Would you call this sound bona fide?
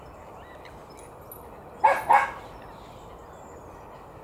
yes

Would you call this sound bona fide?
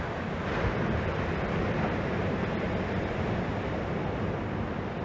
yes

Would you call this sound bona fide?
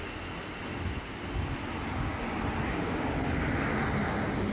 yes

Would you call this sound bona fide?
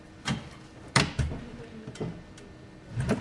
yes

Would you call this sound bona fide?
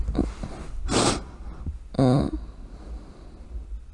yes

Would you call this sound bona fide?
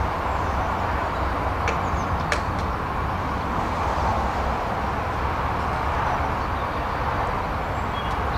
yes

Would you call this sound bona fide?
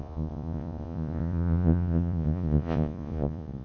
no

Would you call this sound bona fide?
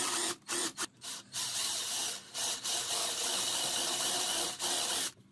no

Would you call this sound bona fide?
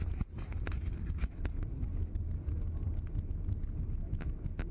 yes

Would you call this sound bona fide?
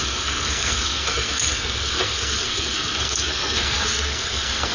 no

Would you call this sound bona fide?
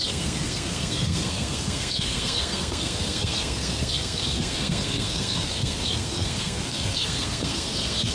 no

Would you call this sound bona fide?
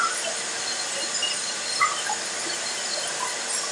yes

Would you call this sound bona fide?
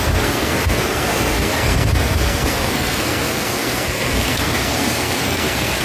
no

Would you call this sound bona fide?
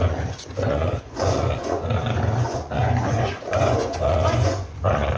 no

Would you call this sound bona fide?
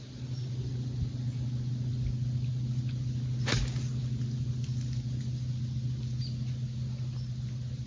yes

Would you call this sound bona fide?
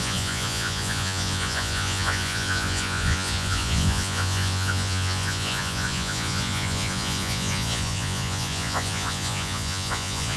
no